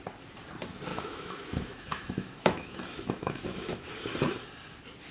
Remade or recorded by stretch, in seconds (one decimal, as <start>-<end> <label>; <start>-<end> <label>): 0.0-0.9 recorded; 0.9-3.9 remade; 3.9-5.1 recorded